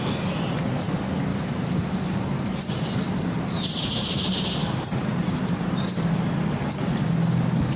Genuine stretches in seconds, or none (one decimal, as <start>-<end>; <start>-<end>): 0.0-1.3; 5.8-7.8